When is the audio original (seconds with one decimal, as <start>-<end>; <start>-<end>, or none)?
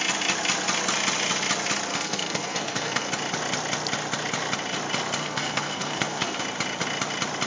0.0-1.9; 3.1-5.2; 6.4-7.5